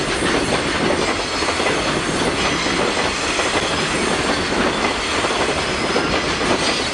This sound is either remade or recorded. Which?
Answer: recorded